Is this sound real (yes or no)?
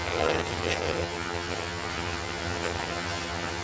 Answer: no